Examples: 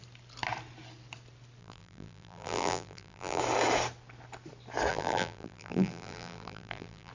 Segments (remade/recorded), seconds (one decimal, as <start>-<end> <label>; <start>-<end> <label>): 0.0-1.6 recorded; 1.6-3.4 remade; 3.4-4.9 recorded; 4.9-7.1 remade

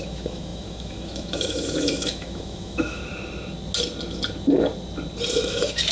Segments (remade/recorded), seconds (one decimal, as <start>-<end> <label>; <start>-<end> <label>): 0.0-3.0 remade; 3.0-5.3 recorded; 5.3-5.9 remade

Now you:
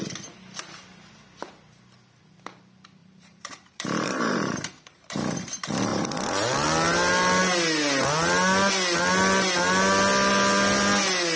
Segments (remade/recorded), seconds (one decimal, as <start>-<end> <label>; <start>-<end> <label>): 0.0-3.0 recorded; 3.0-5.5 remade; 5.5-11.4 recorded

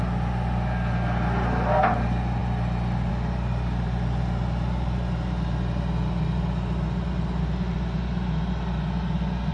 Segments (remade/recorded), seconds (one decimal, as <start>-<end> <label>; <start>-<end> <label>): 0.0-9.5 recorded

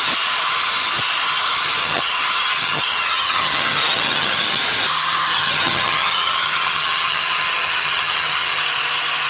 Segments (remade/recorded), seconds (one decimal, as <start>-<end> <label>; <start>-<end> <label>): 0.0-1.8 recorded; 1.8-4.6 remade; 4.6-5.3 recorded; 5.3-8.6 remade; 8.6-9.3 recorded

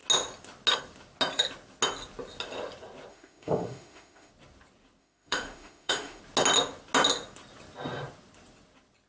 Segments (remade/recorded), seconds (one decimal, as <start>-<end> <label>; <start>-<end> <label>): 0.0-3.1 recorded; 3.1-4.3 remade; 4.3-5.0 recorded; 5.0-6.2 remade; 6.2-9.1 recorded